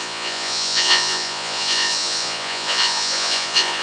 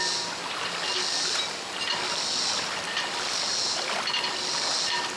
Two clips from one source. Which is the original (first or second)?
second